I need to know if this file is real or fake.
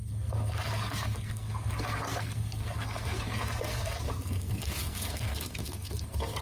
fake